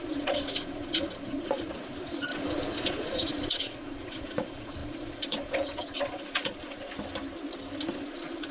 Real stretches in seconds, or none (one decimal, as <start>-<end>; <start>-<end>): 6.9-7.9